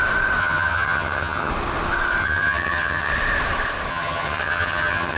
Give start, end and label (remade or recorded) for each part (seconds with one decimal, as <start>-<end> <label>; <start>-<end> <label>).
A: 0.0-0.4 recorded; 0.4-1.5 remade; 1.5-2.2 recorded; 2.2-3.1 remade; 3.1-3.9 recorded; 3.9-5.2 remade